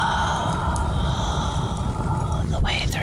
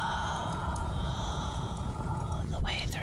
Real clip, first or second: first